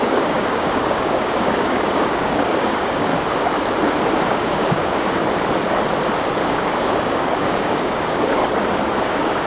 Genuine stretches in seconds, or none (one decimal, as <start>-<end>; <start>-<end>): 3.1-4.3; 5.2-6.4; 8.4-9.0